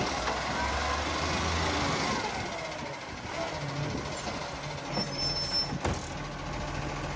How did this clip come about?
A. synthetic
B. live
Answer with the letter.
B